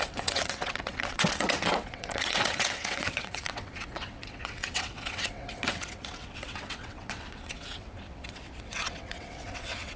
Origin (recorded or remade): remade